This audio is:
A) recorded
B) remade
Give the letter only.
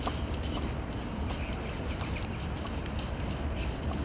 A